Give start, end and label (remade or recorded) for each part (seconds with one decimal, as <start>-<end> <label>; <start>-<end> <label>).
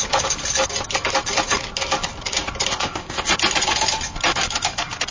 0.0-2.7 recorded; 2.7-3.3 remade; 3.3-5.1 recorded